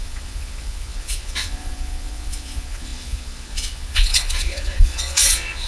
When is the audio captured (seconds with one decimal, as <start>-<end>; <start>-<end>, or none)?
none